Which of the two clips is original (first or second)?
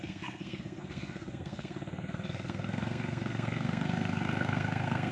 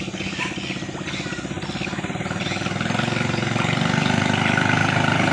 second